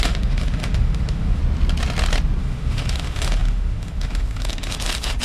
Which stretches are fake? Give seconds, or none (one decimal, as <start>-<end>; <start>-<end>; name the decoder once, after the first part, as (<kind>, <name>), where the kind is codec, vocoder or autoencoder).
0.0-1.4 (autoencoder, DAC-VAE); 2.4-5.2

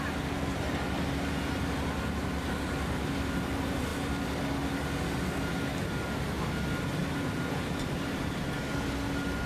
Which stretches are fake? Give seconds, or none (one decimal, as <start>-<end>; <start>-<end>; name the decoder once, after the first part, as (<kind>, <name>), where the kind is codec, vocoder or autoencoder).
none

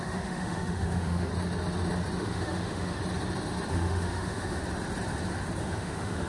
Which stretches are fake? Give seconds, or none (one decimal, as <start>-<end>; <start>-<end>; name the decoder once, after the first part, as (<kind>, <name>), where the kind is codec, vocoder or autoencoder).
0.0-1.3 (autoencoder, DAC-VAE); 2.2-3.0; 3.7-4.6; 5.6-6.3

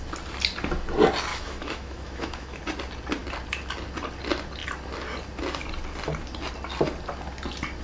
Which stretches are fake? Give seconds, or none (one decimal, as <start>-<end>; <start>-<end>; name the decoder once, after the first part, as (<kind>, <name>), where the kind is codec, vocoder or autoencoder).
1.3-2.6 (autoencoder, DAC-VAE)